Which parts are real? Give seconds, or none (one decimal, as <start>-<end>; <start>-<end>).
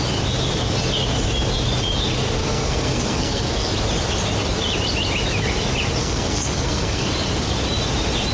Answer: 0.0-2.4; 3.7-6.0; 7.1-8.3